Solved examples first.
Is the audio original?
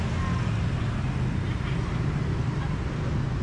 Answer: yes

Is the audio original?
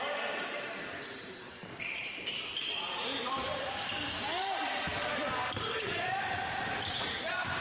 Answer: no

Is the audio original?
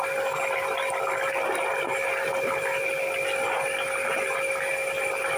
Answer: no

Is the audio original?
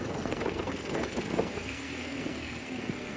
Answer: no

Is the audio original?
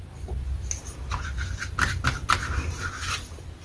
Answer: yes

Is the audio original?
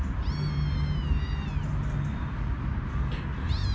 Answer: yes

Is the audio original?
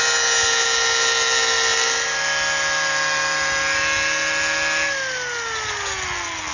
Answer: yes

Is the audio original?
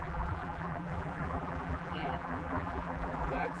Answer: no